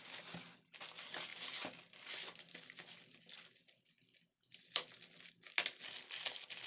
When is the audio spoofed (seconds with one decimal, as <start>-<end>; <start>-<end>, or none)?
1.3-5.3